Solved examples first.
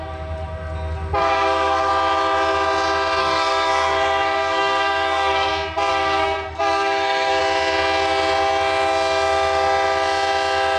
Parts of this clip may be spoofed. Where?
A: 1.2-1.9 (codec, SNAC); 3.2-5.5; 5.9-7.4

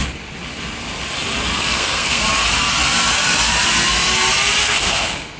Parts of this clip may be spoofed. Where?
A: 1.5-2.2 (codec, SNAC); 4.6-5.4